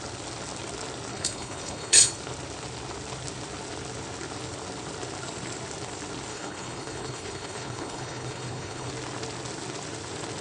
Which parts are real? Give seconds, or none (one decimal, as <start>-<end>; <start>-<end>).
0.0-1.1; 2.1-6.3; 8.9-10.4